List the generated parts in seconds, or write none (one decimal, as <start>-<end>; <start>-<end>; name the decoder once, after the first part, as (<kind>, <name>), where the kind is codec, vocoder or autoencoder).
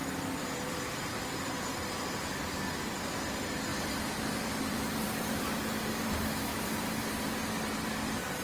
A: 0.0-2.2 (vocoder, BigVGAN v2); 3.7-6.1; 6.5-7.1